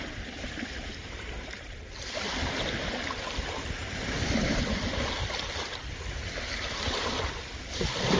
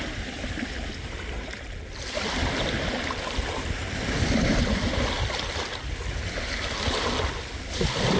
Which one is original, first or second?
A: second